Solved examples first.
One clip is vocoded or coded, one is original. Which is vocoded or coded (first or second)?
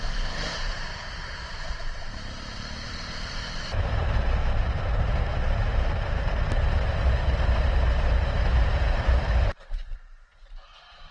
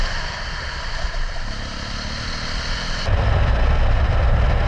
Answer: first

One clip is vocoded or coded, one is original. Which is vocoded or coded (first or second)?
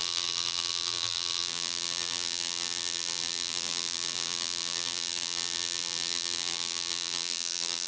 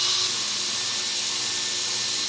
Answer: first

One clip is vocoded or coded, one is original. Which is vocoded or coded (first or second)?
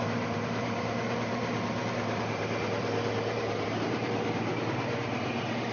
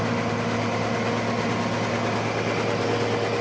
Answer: first